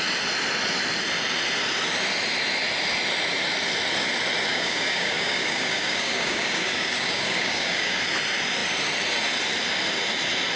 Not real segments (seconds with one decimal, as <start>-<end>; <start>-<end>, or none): 4.5-8.0

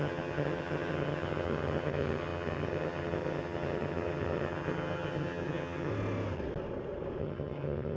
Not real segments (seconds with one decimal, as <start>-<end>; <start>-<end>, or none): 0.0-5.9; 7.2-8.0

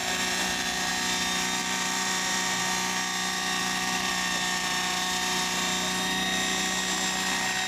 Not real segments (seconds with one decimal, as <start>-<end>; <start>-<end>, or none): 0.0-0.9; 1.6-2.6; 3.6-4.1

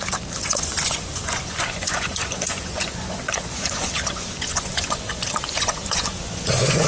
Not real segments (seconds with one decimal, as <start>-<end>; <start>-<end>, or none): 0.0-6.9

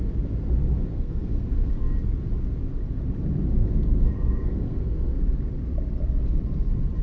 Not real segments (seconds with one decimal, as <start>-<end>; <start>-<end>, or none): 0.9-1.8; 3.6-5.2

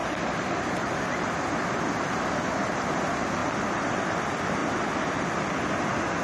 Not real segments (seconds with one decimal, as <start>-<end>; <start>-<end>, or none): 0.0-3.0; 3.4-4.0; 4.6-5.5